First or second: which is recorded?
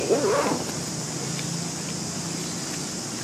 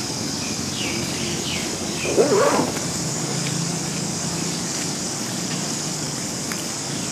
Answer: first